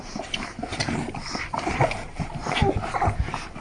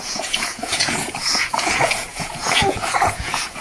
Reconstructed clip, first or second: second